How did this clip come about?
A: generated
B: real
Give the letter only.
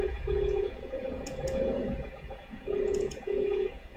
A